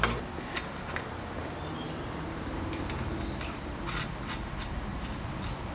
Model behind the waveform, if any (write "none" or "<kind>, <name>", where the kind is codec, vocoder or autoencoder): none